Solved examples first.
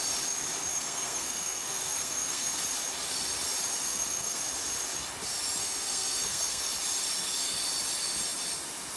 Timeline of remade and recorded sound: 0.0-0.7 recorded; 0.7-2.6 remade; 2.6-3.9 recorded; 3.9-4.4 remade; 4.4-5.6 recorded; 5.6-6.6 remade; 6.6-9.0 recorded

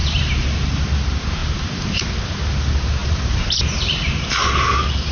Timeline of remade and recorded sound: 0.0-0.8 remade; 0.8-3.0 recorded; 3.0-4.5 remade; 4.5-5.1 recorded